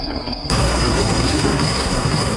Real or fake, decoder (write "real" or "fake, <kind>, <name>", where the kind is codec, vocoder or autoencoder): fake, codec, SNAC